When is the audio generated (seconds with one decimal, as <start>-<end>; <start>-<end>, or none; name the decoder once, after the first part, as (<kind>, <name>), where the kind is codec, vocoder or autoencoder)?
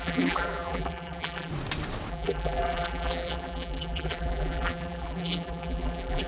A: 0.0-1.5 (vocoder, BigVGAN v2); 2.1-6.3